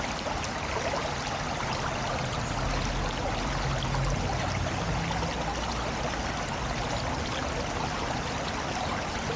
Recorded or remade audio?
recorded